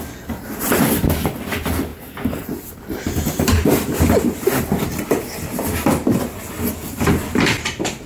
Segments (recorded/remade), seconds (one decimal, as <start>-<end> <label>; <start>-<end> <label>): 0.0-8.1 recorded